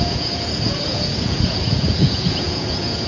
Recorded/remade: remade